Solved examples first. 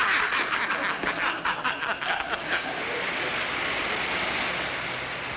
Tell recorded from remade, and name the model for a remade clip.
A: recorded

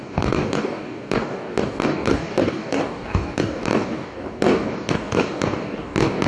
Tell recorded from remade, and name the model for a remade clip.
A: remade, codec, DAC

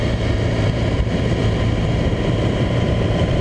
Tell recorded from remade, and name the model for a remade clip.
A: remade, vocoder, BigVGAN v2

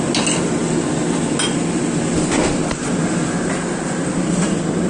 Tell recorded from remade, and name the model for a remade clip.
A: recorded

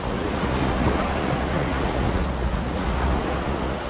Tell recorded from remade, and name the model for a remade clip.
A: remade, vocoder, Vocos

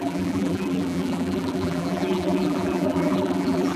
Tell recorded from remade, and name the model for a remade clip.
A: remade, vocoder, BigVGAN v2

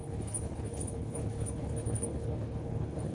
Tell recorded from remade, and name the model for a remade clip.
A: remade, codec, HILCodec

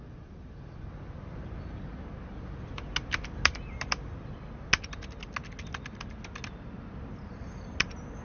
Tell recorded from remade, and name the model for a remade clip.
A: recorded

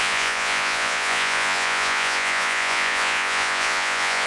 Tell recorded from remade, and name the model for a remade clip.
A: remade, vocoder, Vocos